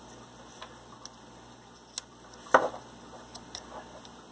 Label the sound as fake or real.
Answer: real